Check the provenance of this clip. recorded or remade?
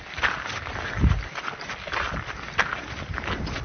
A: recorded